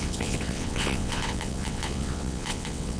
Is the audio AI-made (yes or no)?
yes